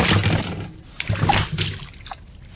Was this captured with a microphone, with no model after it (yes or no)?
yes